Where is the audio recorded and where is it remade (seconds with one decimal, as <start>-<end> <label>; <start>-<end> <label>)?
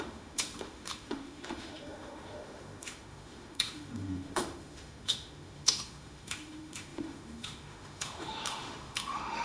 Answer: 0.0-9.4 remade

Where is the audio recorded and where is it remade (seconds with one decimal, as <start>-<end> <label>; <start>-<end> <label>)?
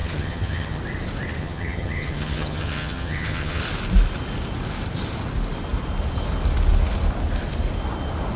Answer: 0.0-0.8 remade; 0.8-1.4 recorded; 1.4-3.6 remade; 3.6-8.4 recorded